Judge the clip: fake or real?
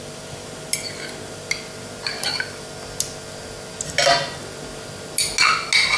real